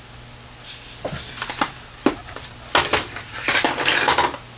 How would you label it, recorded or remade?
recorded